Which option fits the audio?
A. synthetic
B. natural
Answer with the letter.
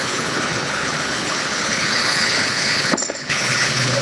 A